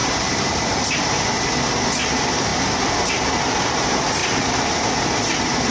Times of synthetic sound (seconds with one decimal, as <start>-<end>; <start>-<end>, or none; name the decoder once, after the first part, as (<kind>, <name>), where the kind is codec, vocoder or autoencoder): 0.0-1.0 (vocoder, BigVGAN v2); 4.2-4.7